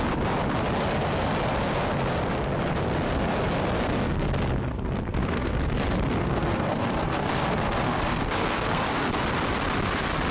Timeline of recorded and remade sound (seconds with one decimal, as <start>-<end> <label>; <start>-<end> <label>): 0.0-5.2 recorded; 5.2-5.7 remade; 5.7-6.2 recorded; 6.2-8.8 remade; 8.8-10.3 recorded